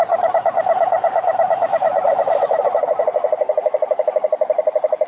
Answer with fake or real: real